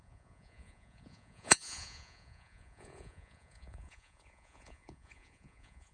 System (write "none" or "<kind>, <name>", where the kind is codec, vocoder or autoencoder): vocoder, Vocos